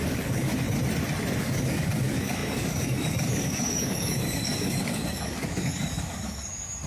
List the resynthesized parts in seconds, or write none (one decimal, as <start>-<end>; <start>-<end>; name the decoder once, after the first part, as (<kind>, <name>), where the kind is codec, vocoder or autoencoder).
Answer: 0.0-0.5 (codec, DAC); 1.4-6.9